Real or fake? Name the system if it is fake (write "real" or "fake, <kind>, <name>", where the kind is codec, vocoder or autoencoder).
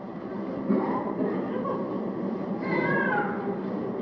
real